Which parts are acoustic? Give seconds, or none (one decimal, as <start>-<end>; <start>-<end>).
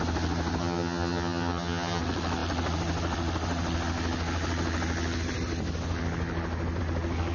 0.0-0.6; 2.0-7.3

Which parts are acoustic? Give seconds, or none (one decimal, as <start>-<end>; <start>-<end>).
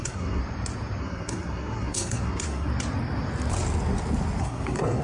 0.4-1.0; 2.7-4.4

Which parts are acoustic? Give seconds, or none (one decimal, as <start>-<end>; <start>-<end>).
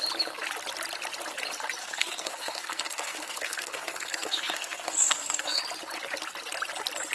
0.0-1.8; 5.6-7.1